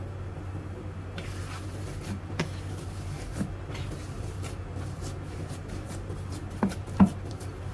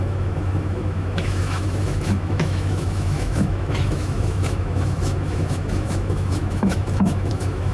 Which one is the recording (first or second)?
first